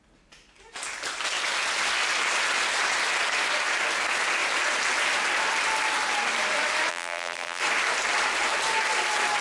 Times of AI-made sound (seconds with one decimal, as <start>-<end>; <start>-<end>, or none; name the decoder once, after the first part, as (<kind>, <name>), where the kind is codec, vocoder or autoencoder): 6.9-7.6 (vocoder, BigVGAN v2)